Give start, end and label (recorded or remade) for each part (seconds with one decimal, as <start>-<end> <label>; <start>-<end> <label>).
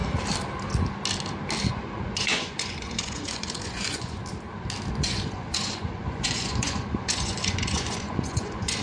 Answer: 0.0-1.7 recorded; 1.7-4.2 remade; 4.2-4.9 recorded; 4.9-8.8 remade